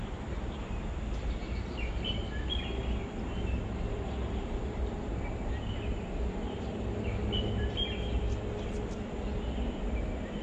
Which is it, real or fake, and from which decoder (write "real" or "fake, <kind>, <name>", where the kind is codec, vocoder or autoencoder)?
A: real